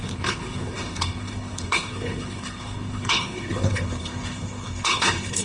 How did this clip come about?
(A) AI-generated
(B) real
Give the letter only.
A